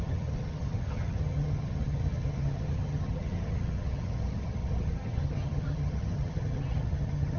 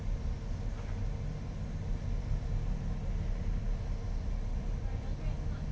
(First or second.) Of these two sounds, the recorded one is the second